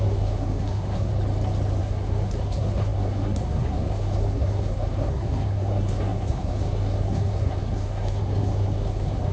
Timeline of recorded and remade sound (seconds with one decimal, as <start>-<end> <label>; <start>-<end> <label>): 0.0-1.1 remade; 1.1-1.8 recorded; 1.8-9.3 remade